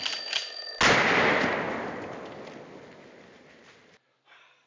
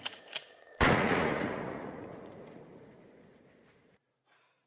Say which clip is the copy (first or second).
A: second